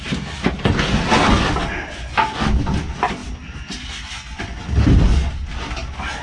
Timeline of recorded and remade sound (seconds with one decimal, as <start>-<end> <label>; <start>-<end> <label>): 0.0-6.2 recorded